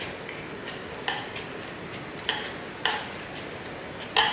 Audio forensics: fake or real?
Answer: real